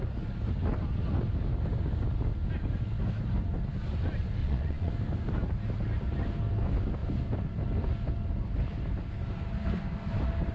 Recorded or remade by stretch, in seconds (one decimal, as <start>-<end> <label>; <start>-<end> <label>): 0.0-4.4 recorded; 4.4-4.9 remade; 4.9-10.5 recorded